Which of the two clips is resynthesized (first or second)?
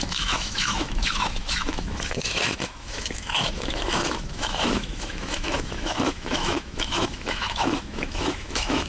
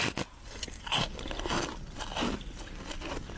first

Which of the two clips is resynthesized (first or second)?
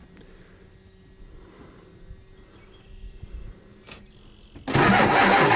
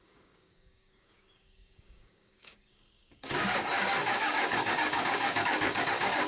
second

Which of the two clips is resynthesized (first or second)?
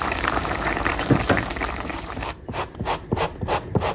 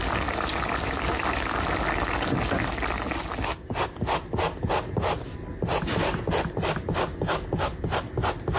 first